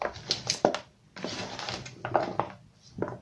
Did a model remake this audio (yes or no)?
no